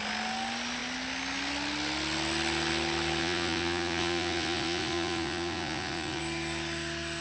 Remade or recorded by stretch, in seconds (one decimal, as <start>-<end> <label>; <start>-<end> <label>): 0.0-3.2 recorded; 3.2-6.2 remade; 6.2-7.2 recorded